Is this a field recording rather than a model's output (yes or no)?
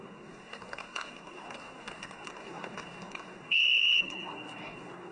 no